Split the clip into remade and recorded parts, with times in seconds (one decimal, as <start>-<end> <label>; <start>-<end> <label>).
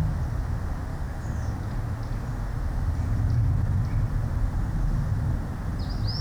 0.0-0.9 recorded; 0.9-1.5 remade; 1.5-6.2 recorded